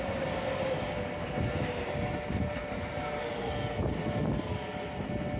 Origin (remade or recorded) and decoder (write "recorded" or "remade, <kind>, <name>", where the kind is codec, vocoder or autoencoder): recorded